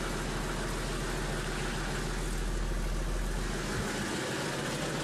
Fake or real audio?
real